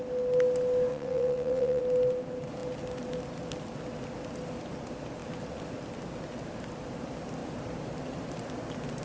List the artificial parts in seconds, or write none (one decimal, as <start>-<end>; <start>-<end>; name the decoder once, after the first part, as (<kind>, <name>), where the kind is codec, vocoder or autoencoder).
0.9-1.8 (vocoder, WaveNeXt)